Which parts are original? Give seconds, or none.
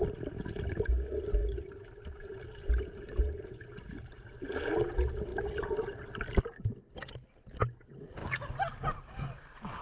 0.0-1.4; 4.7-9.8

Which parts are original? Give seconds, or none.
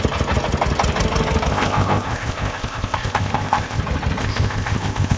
0.0-1.5; 3.8-4.2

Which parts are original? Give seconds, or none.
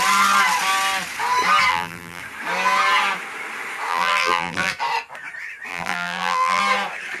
0.0-1.7; 2.2-3.9; 4.7-5.7; 6.6-7.2